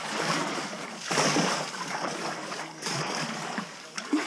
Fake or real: fake